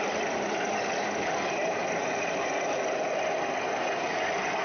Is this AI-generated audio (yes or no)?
no